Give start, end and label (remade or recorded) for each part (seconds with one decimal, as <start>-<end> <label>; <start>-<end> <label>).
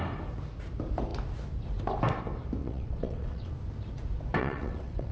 0.0-2.6 recorded; 2.6-3.5 remade; 3.5-4.4 recorded; 4.4-5.1 remade